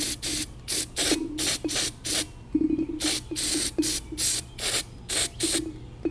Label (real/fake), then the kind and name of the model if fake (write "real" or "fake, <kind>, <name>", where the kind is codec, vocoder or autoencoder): real